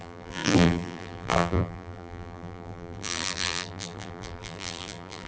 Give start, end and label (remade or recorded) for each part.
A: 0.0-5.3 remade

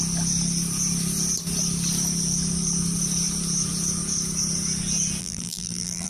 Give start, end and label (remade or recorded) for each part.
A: 0.0-5.2 recorded; 5.2-6.1 remade

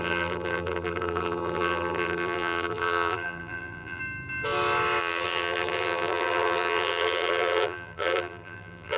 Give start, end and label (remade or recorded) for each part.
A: 0.0-4.0 remade; 4.0-5.0 recorded; 5.0-9.0 remade

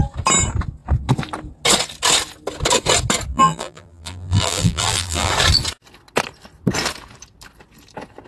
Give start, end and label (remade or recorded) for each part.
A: 0.0-3.3 recorded; 3.3-5.3 remade; 5.3-8.3 recorded

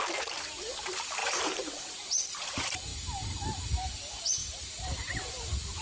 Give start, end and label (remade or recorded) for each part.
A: 0.0-2.9 remade; 2.9-3.9 recorded; 3.9-5.8 remade

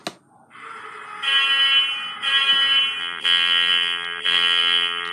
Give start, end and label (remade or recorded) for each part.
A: 0.0-3.0 recorded; 3.0-5.1 remade

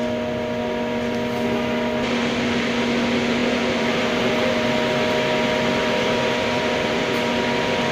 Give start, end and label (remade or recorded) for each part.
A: 0.0-3.4 recorded; 3.4-4.3 remade; 4.3-5.8 recorded; 5.8-7.1 remade; 7.1-7.9 recorded